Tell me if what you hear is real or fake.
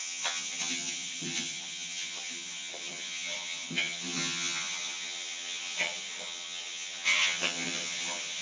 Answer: fake